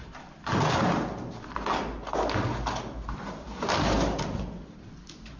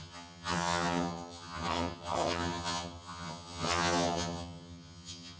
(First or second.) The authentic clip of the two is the first